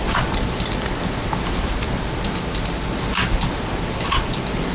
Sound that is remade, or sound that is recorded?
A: recorded